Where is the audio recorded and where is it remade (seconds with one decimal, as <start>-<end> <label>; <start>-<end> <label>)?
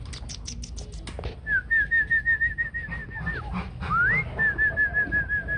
0.0-5.6 recorded